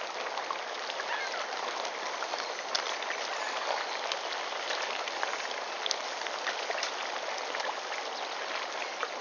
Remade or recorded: recorded